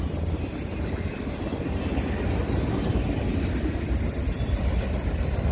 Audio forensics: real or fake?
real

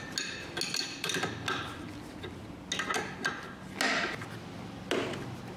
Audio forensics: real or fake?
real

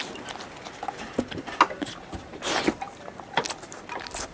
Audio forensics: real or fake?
real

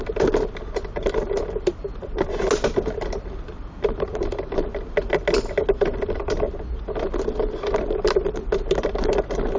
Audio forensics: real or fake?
real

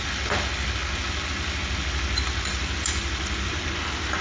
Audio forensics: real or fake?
real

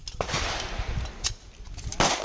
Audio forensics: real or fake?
real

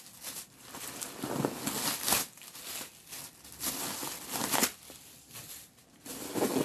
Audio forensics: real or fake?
real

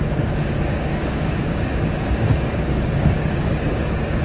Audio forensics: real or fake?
fake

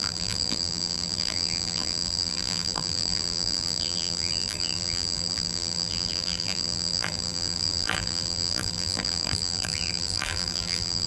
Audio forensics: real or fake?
fake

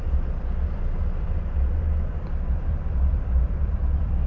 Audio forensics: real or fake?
fake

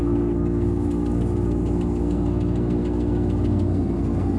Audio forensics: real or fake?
fake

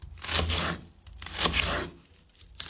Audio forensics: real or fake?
real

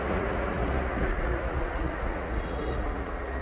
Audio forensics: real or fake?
fake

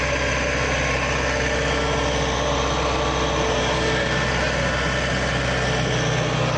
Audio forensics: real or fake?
real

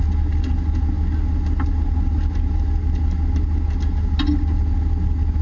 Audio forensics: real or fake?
real